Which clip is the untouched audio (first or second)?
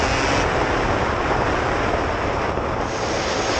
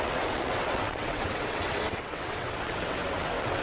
first